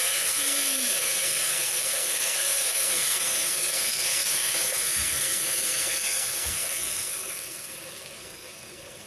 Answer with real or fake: fake